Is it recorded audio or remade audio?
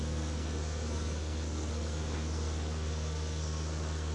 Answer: remade